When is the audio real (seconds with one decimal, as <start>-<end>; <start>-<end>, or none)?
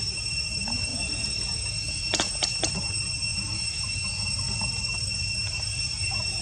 0.0-0.9; 2.7-3.3; 4.3-6.4